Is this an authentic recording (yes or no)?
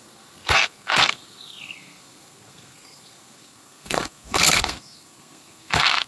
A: no